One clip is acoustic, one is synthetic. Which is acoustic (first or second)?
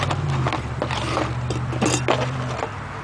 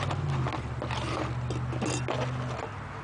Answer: second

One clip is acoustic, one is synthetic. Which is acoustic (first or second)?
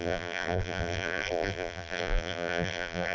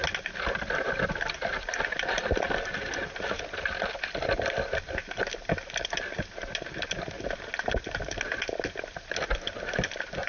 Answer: second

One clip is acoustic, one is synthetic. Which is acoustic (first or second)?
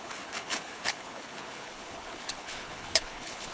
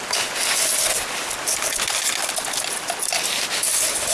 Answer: second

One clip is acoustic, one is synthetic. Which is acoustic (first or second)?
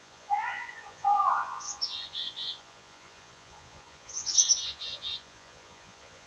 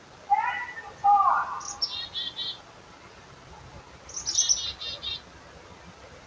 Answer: second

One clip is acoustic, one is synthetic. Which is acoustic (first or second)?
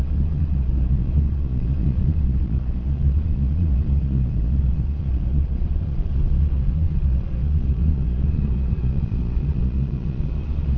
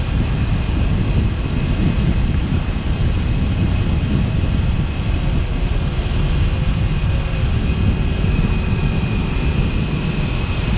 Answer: second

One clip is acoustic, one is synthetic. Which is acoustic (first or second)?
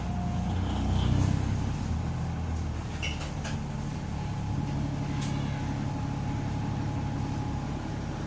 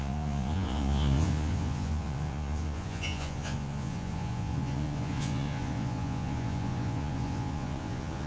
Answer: first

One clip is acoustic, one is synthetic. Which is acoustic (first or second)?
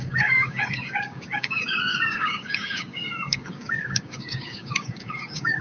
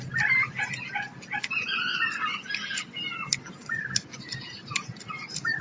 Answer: second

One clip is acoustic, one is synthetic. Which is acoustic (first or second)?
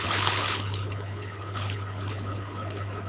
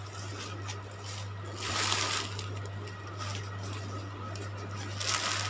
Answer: second